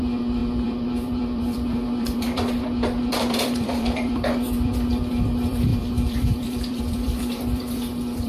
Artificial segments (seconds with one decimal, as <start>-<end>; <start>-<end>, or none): 0.0-8.3